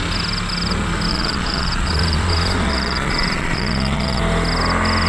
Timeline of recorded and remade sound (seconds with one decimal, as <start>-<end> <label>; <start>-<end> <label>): 0.0-1.1 recorded; 1.1-4.2 remade; 4.2-5.1 recorded